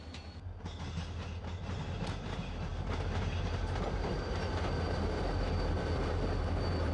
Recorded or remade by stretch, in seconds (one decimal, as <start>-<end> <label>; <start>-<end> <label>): 0.0-6.9 recorded